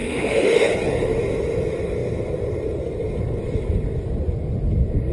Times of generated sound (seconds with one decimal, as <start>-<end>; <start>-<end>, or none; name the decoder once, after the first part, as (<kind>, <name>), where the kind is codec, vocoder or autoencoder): 0.0-0.7 (autoencoder, DAC-VAE)